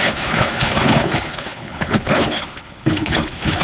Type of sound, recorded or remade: remade